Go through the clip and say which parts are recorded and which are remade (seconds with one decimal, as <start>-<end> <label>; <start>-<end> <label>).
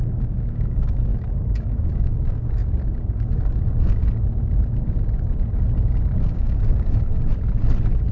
0.0-2.6 remade; 2.6-3.1 recorded; 3.1-4.0 remade; 4.0-6.2 recorded; 6.2-7.3 remade; 7.3-8.1 recorded